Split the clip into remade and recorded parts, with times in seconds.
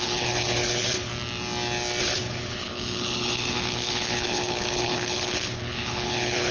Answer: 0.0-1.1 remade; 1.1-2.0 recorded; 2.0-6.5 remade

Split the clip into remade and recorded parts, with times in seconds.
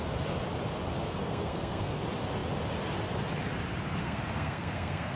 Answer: 0.0-1.2 recorded; 1.2-2.0 remade; 2.0-4.0 recorded; 4.0-5.2 remade